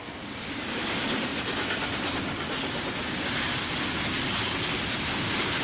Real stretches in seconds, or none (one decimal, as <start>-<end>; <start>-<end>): 1.3-4.6